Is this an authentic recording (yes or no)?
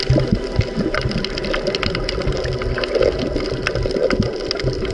yes